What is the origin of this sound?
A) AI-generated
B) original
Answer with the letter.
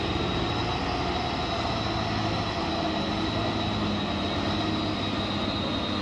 B